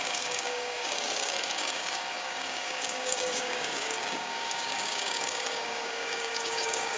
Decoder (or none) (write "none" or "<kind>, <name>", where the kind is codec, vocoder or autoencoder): codec, DAC